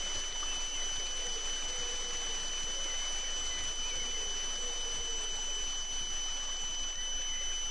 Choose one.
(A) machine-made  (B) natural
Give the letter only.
B